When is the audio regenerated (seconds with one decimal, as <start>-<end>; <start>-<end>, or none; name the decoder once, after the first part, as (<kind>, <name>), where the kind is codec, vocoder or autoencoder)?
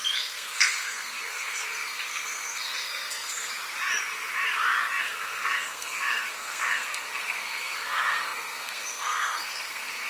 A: 0.0-3.5 (codec, SNAC); 5.0-10.1